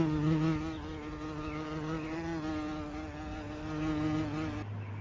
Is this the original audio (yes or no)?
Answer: yes